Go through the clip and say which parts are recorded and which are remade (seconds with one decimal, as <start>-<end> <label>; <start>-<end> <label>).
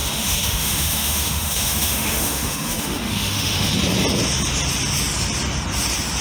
0.0-3.7 remade; 3.7-6.2 recorded